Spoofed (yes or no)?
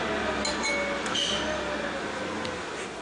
no